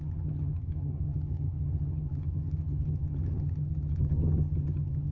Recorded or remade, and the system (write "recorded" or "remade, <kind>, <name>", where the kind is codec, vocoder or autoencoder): remade, vocoder, HiFi-GAN